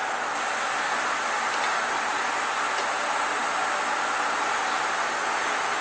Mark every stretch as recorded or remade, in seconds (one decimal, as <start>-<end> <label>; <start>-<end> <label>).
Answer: 0.0-5.8 recorded